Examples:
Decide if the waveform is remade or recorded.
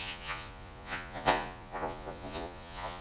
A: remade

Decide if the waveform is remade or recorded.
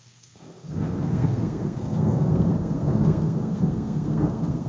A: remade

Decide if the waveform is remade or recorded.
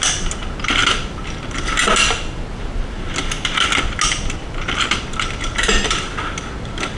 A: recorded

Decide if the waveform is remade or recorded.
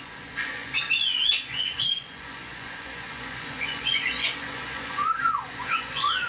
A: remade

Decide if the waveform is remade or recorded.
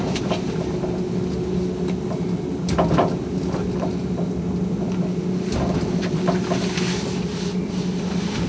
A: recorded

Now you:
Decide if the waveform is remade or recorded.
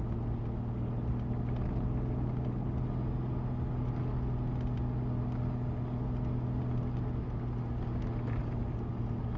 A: recorded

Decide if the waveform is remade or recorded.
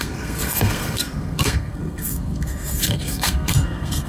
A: remade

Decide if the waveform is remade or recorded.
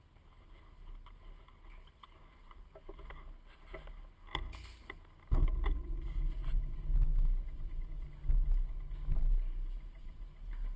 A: recorded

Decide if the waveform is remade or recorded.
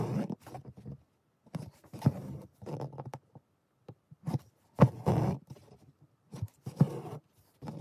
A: recorded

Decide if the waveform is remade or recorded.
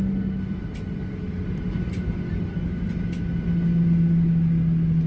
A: recorded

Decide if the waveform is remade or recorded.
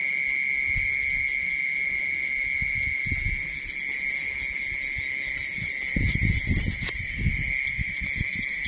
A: recorded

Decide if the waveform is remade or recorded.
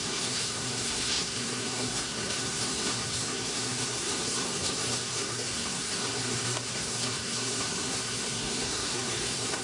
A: remade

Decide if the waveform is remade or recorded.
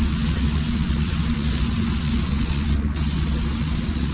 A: remade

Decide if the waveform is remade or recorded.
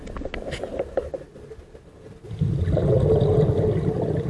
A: recorded